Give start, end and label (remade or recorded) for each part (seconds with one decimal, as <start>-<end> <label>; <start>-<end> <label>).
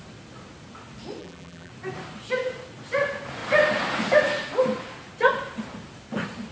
0.0-1.2 recorded; 1.2-1.7 remade; 1.7-6.5 recorded